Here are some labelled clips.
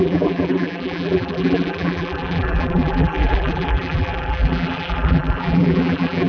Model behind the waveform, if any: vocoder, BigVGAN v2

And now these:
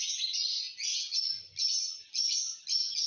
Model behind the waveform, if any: none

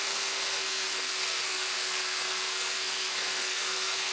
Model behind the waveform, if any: codec, SNAC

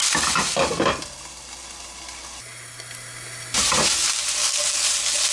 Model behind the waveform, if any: none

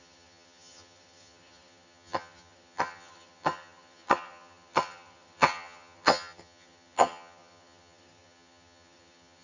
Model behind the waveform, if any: vocoder, HiFi-GAN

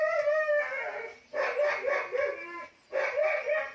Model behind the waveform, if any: none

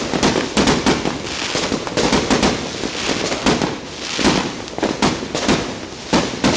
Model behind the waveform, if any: none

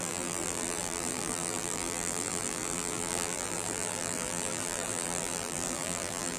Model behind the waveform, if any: vocoder, BigVGAN v2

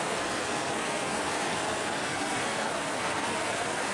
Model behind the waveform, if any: codec, SNAC